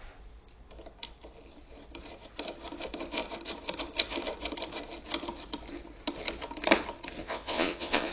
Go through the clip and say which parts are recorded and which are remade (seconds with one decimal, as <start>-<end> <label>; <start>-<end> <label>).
0.0-7.2 recorded; 7.2-8.1 remade